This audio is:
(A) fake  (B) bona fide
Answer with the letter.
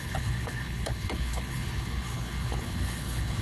A